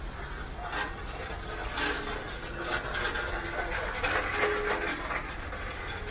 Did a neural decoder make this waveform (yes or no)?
no